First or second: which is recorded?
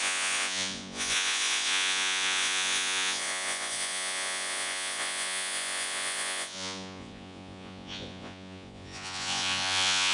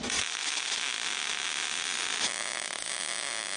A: second